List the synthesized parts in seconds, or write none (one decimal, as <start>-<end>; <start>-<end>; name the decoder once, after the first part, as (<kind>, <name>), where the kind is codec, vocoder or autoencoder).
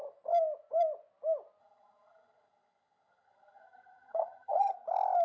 1.6-4.7 (vocoder, HiFi-GAN)